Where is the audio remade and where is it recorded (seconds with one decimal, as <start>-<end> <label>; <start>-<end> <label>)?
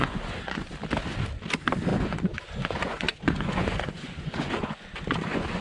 0.0-0.6 remade; 0.6-1.9 recorded; 1.9-5.6 remade